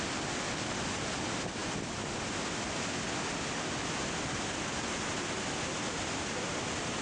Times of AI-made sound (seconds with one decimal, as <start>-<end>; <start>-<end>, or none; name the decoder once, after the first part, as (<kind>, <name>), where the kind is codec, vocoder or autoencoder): none